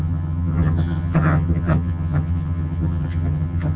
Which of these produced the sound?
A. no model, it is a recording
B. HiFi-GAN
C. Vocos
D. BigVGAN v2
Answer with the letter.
B